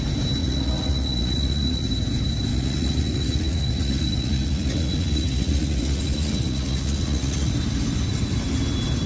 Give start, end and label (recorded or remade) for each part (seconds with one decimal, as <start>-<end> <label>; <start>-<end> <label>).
0.0-0.4 recorded; 0.4-1.9 remade; 1.9-2.5 recorded; 2.5-7.5 remade; 7.5-9.1 recorded